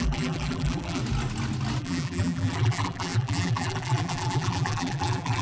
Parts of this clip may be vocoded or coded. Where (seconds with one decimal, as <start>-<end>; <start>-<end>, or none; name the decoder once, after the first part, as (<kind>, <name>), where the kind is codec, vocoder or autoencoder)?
0.0-1.0 (vocoder, BigVGAN v2); 1.8-5.4